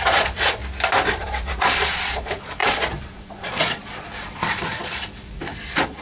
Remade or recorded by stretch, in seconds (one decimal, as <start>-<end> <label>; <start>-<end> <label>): 0.0-0.6 remade; 0.6-1.1 recorded; 1.1-6.0 remade